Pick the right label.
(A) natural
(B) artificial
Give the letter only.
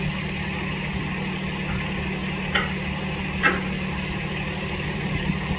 A